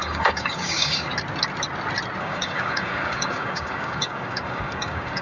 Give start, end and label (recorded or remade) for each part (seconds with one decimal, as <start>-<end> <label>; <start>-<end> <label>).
0.0-1.1 remade; 1.1-2.2 recorded; 2.2-5.2 remade